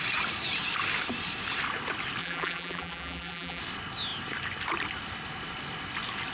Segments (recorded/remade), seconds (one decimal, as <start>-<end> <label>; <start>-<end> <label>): 0.0-2.2 recorded; 2.2-3.6 remade; 3.6-6.3 recorded